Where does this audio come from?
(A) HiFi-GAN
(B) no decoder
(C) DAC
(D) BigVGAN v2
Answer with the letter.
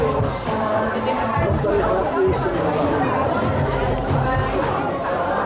D